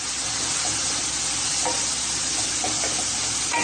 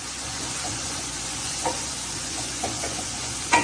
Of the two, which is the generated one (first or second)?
second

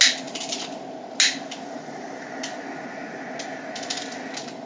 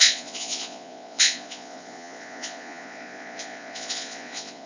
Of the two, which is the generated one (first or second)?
second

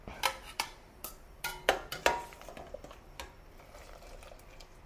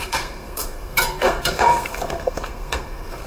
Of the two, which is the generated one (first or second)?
second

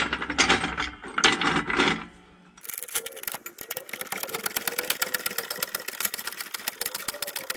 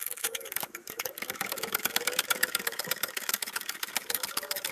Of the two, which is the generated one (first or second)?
second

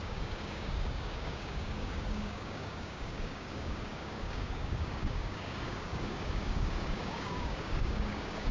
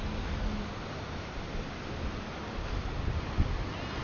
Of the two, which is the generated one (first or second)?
first